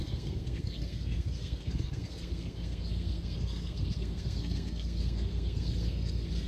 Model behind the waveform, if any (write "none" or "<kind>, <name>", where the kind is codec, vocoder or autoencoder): codec, SNAC